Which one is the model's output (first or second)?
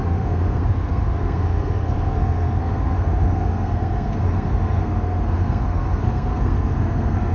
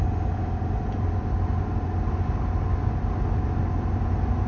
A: first